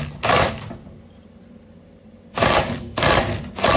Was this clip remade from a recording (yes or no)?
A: no